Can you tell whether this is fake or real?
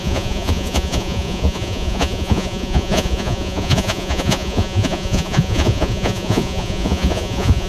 fake